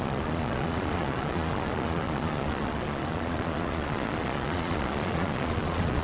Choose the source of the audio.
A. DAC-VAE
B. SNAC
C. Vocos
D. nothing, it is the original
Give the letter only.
C